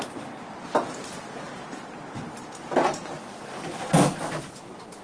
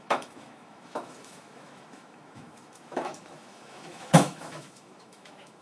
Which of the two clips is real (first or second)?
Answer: first